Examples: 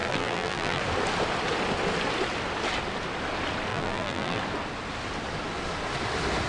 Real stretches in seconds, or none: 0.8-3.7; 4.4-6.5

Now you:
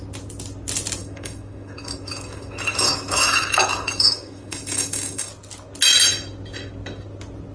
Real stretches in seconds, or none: 0.0-1.0; 5.3-7.5

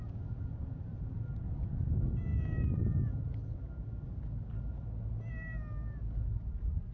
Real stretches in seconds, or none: 0.0-6.9

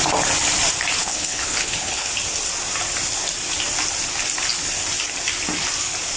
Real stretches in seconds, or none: 0.0-1.0; 2.1-6.2

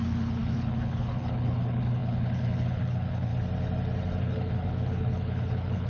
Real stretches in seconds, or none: 3.3-4.2